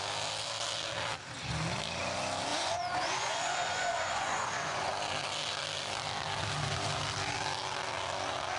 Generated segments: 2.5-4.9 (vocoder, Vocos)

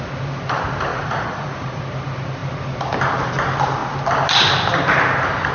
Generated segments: 0.9-1.8 (vocoder, Vocos)

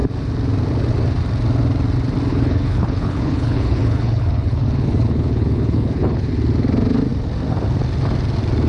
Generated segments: 2.3-6.3 (codec, HILCodec)

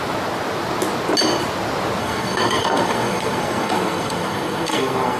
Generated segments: 2.0-5.2 (codec, SNAC)